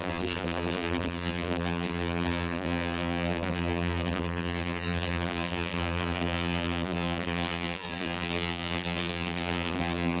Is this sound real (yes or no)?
no